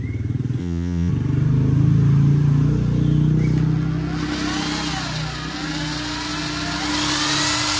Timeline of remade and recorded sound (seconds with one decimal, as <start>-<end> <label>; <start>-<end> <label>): 0.0-0.6 recorded; 0.6-1.1 remade; 1.1-7.8 recorded